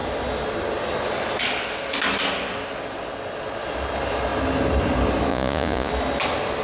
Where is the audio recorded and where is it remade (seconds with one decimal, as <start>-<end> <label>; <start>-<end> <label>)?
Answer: 0.0-5.3 recorded; 5.3-5.9 remade; 5.9-6.6 recorded